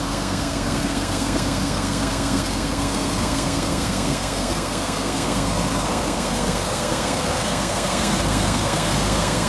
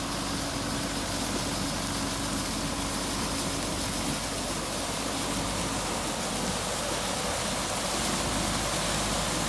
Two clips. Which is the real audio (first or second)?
second